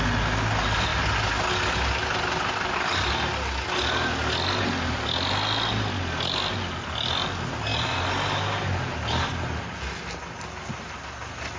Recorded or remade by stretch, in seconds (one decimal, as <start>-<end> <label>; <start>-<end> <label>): 0.0-11.6 recorded